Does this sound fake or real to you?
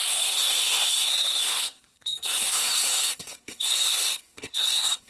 fake